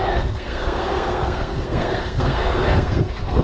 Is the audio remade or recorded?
remade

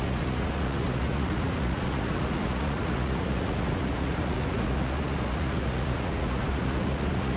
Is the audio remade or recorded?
remade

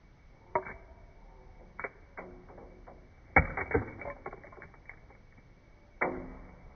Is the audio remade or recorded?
recorded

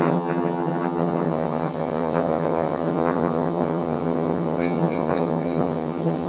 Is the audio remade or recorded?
remade